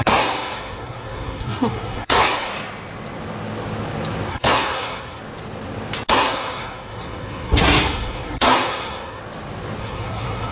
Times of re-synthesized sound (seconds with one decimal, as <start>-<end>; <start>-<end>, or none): 0.0-2.5; 4.3-5.2; 6.1-9.2; 9.8-10.5